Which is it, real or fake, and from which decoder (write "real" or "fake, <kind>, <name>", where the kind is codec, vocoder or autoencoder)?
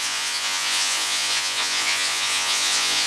fake, vocoder, Vocos